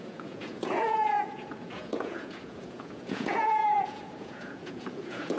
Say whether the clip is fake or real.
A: fake